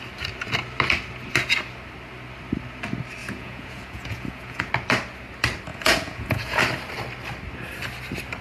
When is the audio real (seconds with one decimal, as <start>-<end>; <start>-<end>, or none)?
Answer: 0.0-3.2; 4.7-5.7; 6.6-8.4